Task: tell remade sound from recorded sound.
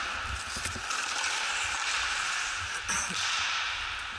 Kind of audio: recorded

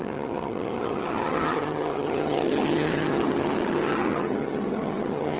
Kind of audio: remade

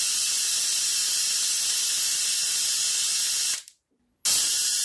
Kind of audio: recorded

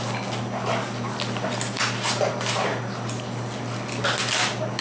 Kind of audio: recorded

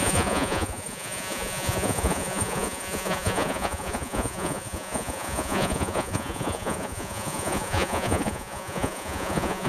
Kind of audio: remade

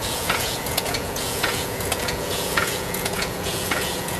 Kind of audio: remade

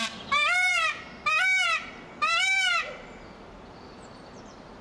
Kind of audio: remade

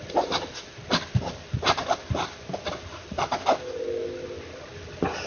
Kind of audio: recorded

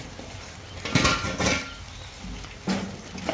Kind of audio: recorded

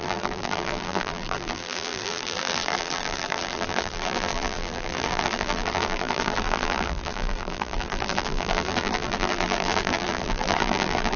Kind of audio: remade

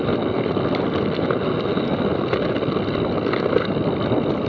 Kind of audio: recorded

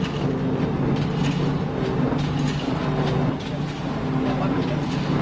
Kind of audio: recorded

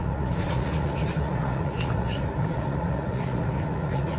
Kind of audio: remade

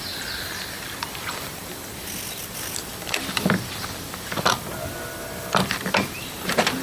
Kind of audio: remade